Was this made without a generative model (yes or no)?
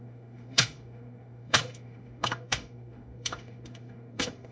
no